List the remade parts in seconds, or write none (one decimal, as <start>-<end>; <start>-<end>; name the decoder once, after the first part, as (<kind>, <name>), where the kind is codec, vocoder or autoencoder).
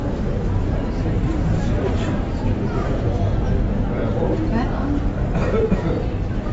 0.6-2.6 (vocoder, BigVGAN v2)